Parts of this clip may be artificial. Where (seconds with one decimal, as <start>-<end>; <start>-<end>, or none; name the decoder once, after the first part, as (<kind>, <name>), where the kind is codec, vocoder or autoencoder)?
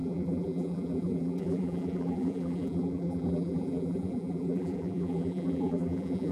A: 0.0-6.3 (vocoder, BigVGAN v2)